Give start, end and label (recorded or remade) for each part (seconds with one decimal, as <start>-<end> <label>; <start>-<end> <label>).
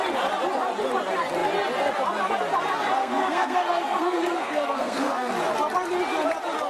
0.0-3.0 recorded; 3.0-5.3 remade; 5.3-6.7 recorded